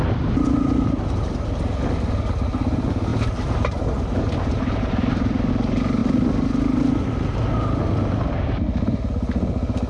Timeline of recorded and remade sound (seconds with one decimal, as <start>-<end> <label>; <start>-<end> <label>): 0.0-3.1 recorded; 3.1-5.5 remade; 5.5-9.9 recorded